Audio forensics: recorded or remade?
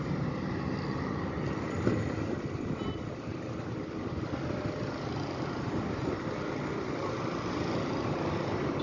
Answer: recorded